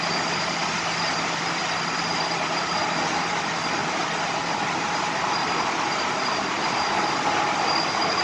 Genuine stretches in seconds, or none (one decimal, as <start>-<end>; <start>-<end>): 0.0-8.2